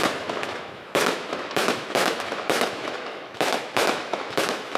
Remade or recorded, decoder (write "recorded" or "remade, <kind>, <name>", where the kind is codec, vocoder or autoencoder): remade, autoencoder, DAC-VAE